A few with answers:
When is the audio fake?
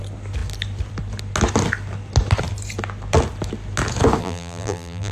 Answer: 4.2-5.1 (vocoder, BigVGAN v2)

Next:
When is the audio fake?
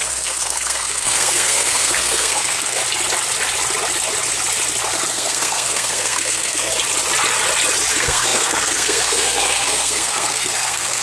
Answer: 0.0-2.8 (codec, SNAC); 5.1-6.7; 7.9-11.0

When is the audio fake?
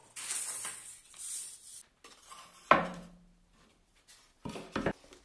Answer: none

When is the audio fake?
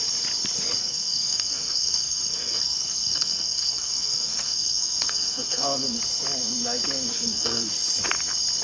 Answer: 0.8-6.0 (codec, SNAC); 7.1-7.7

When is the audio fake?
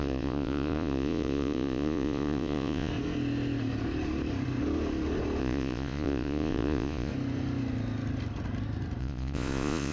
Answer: 0.0-2.9 (vocoder, Vocos); 5.4-7.1; 9.0-9.9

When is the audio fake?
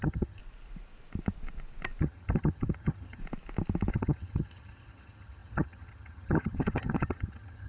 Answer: 0.0-0.4 (vocoder, HiFi-GAN); 2.0-3.2; 3.9-7.7